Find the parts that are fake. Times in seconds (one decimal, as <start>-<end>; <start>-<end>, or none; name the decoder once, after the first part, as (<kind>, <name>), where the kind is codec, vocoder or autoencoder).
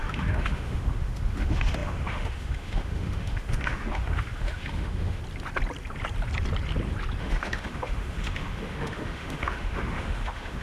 0.0-5.2 (autoencoder, DAC-VAE); 7.2-10.6